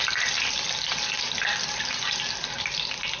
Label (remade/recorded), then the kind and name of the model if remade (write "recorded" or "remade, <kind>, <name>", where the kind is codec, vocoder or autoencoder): recorded